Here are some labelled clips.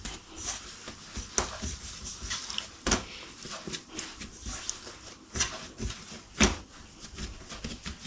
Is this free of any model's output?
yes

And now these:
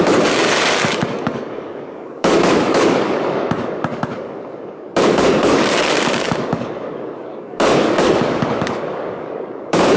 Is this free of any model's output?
no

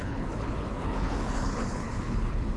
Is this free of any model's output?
no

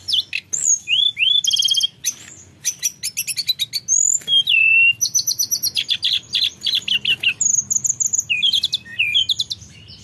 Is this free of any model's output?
yes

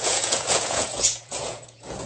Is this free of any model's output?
no